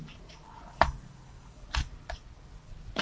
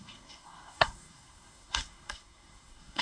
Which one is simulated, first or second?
second